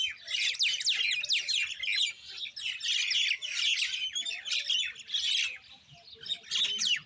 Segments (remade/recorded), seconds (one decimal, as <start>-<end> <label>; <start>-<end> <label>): 0.0-7.1 recorded